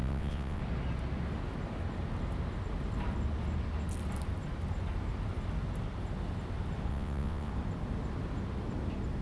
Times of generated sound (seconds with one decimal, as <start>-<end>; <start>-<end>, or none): 0.0-0.6; 6.9-7.5